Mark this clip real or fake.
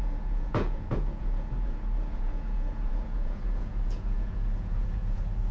fake